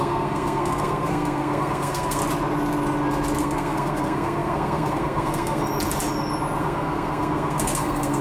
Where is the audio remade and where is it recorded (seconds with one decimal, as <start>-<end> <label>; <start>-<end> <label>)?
0.0-2.2 remade; 2.2-3.4 recorded; 3.4-5.6 remade; 5.6-6.6 recorded; 6.6-8.2 remade